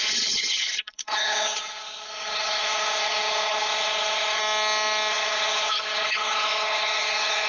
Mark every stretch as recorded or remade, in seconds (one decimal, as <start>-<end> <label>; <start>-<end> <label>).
0.0-4.4 remade; 4.4-5.1 recorded; 5.1-7.5 remade